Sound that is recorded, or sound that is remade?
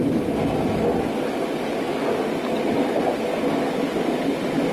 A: recorded